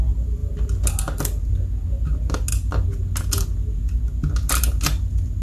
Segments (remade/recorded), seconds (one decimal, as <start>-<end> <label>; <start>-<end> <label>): 0.0-5.4 recorded